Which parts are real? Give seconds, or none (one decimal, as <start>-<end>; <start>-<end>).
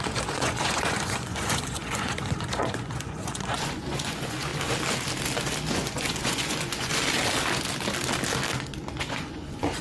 4.5-5.7; 6.9-8.9